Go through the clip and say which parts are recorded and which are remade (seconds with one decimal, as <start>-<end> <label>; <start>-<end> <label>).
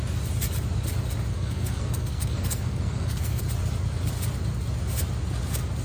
0.0-1.3 recorded; 1.3-3.4 remade; 3.4-5.8 recorded